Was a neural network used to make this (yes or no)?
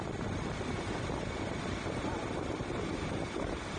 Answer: no